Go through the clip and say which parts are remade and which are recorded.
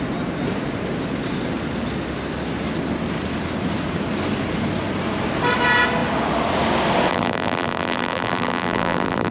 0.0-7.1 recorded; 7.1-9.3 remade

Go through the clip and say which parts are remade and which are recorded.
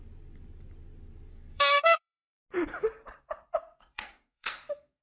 0.0-1.3 recorded; 1.3-2.4 remade; 2.4-3.6 recorded; 3.6-5.0 remade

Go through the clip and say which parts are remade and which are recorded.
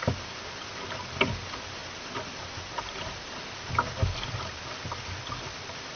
0.0-6.0 recorded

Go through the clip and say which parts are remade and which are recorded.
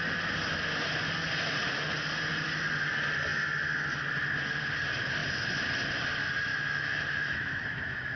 0.0-6.5 recorded; 6.5-8.2 remade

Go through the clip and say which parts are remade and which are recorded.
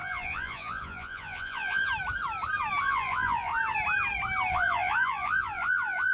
0.0-1.9 remade; 1.9-2.8 recorded; 2.8-3.5 remade; 3.5-4.5 recorded; 4.5-6.1 remade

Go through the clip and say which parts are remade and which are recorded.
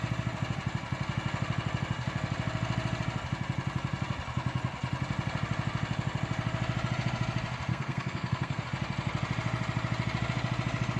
0.0-7.7 recorded; 7.7-8.6 remade; 8.6-11.0 recorded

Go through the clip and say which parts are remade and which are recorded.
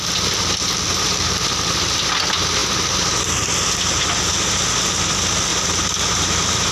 0.0-6.7 recorded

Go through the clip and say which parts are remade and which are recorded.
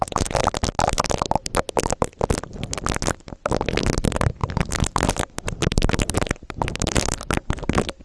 0.0-0.4 recorded; 0.4-1.0 remade; 1.0-4.4 recorded; 4.4-8.0 remade